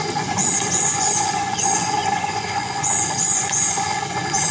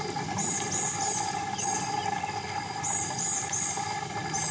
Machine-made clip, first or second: first